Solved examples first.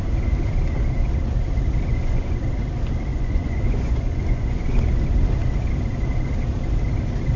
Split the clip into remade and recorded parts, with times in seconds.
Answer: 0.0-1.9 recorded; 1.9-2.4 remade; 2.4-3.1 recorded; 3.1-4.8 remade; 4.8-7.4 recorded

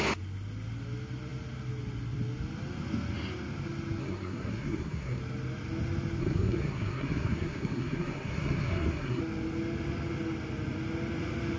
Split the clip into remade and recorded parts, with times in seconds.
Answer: 0.0-4.0 recorded; 4.0-5.2 remade; 5.2-6.2 recorded; 6.2-9.2 remade; 9.2-11.6 recorded

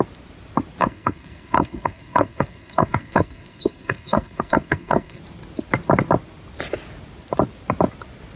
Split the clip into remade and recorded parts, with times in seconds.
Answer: 0.0-0.8 recorded; 0.8-5.2 remade; 5.2-8.4 recorded